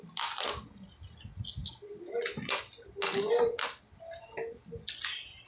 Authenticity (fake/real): real